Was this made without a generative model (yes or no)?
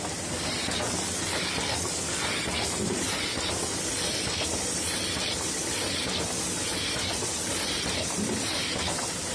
yes